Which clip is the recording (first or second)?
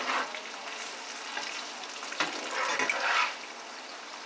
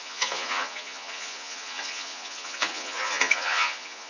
first